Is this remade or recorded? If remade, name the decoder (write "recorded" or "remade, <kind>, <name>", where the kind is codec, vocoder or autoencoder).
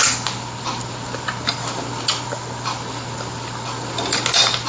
recorded